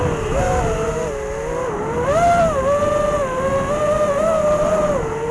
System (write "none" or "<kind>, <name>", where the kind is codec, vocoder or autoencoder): none